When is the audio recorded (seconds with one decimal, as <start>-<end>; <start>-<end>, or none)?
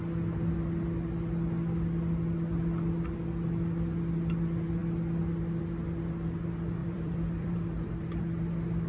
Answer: 0.0-6.8; 8.2-8.9